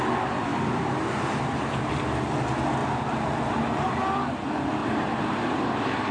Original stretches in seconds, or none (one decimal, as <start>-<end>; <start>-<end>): 0.0-0.5; 1.9-2.8; 4.0-4.8